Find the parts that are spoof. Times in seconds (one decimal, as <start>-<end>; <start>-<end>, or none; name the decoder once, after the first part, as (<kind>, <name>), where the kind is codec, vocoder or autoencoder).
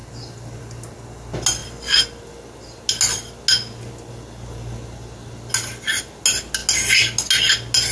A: none